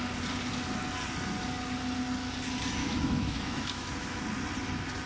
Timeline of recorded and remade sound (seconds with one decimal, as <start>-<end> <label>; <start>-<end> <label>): 0.0-2.8 recorded; 2.8-4.2 remade; 4.2-5.1 recorded